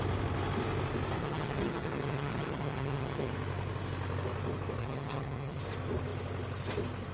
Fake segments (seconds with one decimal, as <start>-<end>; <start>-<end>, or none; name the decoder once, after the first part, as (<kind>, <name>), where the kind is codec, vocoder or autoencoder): 1.2-3.3 (vocoder, HiFi-GAN); 4.8-5.6